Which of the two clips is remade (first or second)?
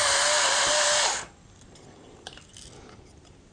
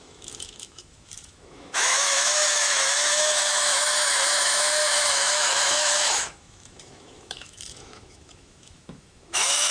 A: second